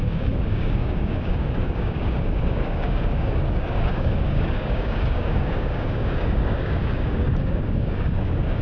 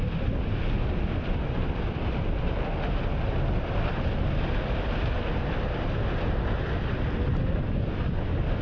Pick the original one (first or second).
second